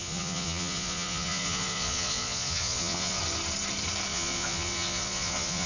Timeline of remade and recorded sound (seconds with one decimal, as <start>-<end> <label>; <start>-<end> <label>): 0.0-3.2 remade; 3.2-4.1 recorded; 4.1-5.7 remade